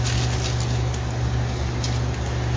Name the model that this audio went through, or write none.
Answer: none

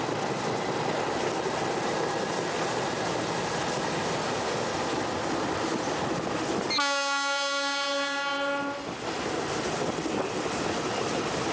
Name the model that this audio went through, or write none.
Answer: none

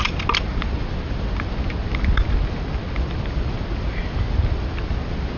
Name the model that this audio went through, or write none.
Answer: none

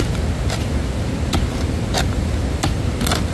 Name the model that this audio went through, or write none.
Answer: none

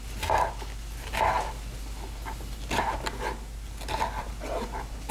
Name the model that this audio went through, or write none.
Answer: none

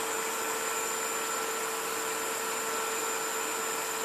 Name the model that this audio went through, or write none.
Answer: none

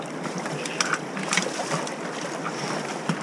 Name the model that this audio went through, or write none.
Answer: vocoder, BigVGAN v2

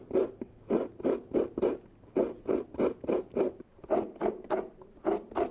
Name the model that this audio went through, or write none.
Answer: none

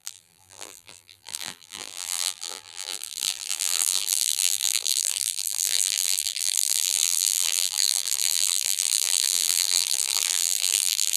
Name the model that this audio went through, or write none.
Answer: vocoder, BigVGAN v2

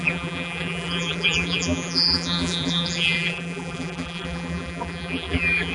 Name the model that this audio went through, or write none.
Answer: vocoder, BigVGAN v2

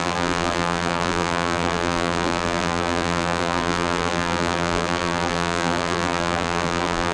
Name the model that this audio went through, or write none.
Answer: vocoder, BigVGAN v2